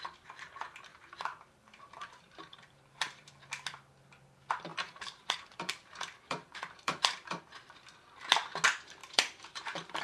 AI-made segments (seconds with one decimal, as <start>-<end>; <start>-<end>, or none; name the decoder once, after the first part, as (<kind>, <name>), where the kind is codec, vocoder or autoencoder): 0.9-3.3 (vocoder, BigVGAN v2); 4.7-7.4; 9.0-10.0